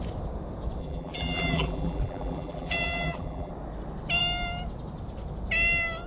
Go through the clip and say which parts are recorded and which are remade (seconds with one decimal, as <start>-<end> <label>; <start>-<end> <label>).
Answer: 0.0-0.8 recorded; 0.8-3.5 remade; 3.5-6.1 recorded